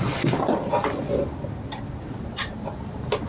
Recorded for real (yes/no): yes